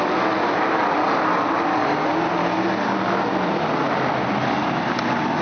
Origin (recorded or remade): recorded